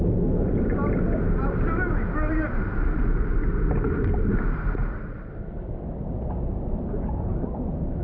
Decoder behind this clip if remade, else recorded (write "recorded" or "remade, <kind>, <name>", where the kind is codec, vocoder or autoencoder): recorded